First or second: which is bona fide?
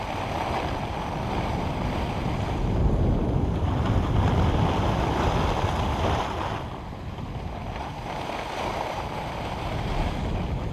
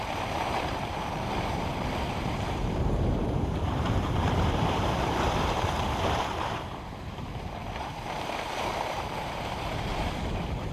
first